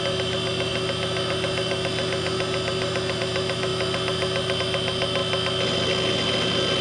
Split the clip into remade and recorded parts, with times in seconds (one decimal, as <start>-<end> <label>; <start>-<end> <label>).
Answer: 0.0-6.8 recorded